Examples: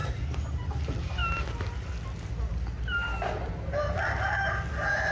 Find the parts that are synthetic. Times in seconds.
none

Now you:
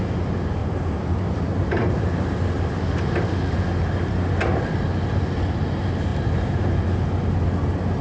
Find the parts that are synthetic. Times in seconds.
0.6-2.4 (vocoder, BigVGAN v2)